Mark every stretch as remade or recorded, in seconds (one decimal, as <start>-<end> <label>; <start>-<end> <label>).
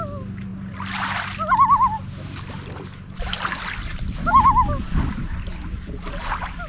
0.0-6.7 recorded